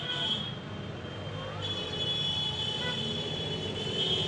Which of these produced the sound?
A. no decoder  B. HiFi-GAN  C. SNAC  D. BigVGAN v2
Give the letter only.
A